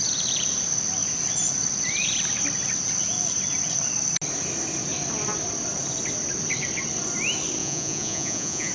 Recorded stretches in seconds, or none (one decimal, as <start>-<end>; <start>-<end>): 0.0-7.6